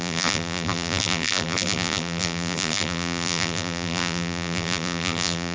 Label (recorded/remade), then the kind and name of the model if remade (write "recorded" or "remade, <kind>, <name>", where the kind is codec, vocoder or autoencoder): remade, vocoder, BigVGAN v2